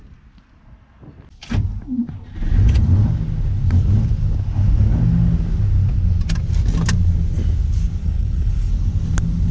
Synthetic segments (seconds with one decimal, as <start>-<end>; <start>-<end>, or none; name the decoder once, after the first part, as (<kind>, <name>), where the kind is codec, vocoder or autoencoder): 8.0-8.7 (codec, HILCodec)